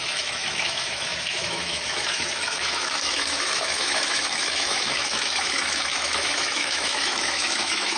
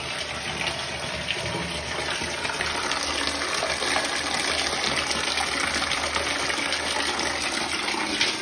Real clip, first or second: second